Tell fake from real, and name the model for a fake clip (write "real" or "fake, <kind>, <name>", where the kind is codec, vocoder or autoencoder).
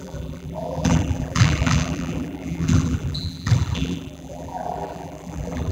fake, vocoder, BigVGAN v2